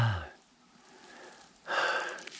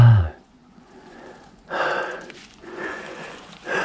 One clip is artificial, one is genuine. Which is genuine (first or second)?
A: first